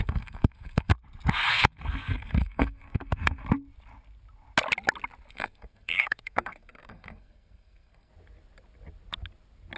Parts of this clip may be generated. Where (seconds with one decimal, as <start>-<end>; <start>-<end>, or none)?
0.0-0.9; 1.5-3.4; 5.3-8.1